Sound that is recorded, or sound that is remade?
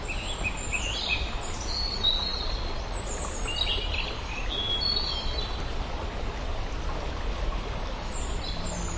recorded